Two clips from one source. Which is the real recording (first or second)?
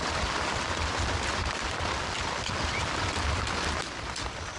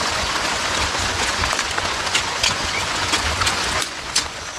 first